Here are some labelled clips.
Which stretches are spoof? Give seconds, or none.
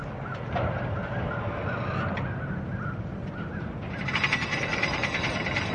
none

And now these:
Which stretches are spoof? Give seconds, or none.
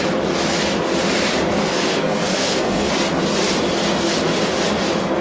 1.5-2.9 (codec, SNAC)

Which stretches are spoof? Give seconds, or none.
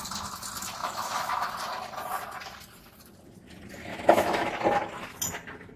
0.8-1.5 (autoencoder, DAC-VAE); 3.9-4.5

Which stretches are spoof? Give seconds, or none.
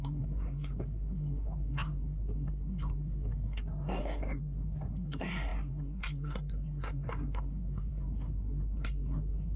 0.0-9.6 (codec, SNAC)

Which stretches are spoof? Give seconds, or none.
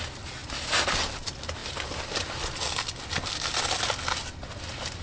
none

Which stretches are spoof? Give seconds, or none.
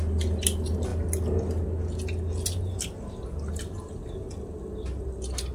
none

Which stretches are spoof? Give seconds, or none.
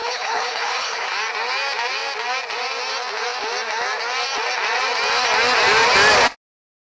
0.0-1.1 (codec, HILCodec)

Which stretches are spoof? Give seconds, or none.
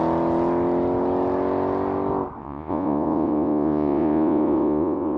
2.4-5.2 (vocoder, Vocos)